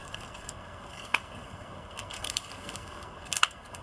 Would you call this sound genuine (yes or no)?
no